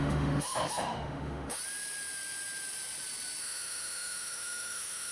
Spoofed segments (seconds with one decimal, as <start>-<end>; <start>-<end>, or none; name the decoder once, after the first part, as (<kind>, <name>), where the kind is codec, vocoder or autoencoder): 0.0-1.6 (autoencoder, DAC-VAE); 3.4-5.1